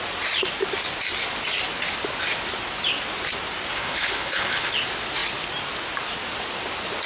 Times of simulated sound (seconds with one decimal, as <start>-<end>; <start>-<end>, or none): 3.7-4.7